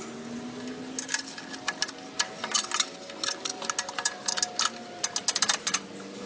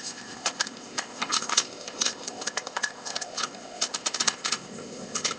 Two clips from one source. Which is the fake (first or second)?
second